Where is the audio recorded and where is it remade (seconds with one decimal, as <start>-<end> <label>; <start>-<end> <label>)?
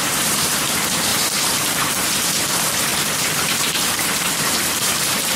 0.0-2.9 remade; 2.9-3.4 recorded; 3.4-5.4 remade